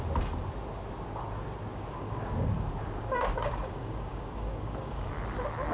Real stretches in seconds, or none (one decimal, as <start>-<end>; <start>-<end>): 0.0-1.7; 5.1-5.7